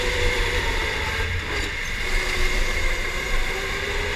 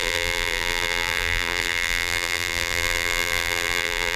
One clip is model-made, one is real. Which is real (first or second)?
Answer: first